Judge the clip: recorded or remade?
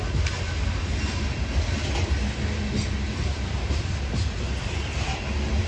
recorded